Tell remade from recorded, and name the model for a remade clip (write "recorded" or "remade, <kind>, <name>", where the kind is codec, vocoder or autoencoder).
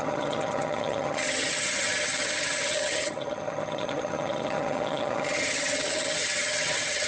remade, vocoder, HiFi-GAN